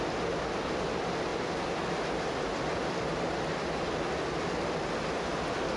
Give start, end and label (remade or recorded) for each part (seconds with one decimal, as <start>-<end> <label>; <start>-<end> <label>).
0.0-5.8 recorded